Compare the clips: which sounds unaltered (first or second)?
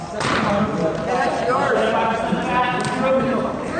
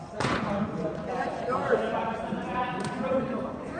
first